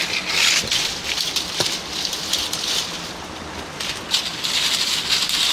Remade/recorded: recorded